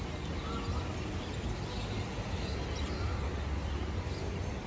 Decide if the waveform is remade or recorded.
recorded